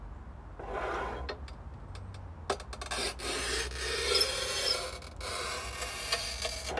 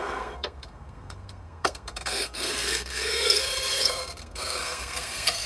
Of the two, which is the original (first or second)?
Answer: first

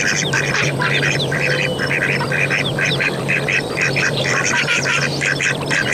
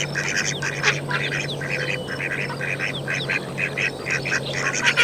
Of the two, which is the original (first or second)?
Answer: second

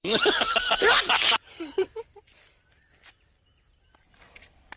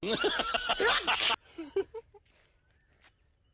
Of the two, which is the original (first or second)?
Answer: second